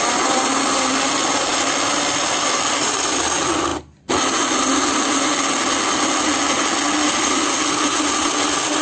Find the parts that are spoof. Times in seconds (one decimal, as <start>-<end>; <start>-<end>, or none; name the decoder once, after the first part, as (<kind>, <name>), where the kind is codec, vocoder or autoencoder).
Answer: 1.5-2.8 (vocoder, BigVGAN v2)